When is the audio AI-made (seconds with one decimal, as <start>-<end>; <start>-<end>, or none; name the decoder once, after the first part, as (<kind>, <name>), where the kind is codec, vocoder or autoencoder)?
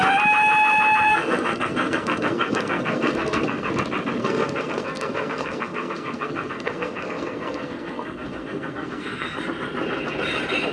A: 1.1-3.7 (codec, SNAC); 4.2-9.4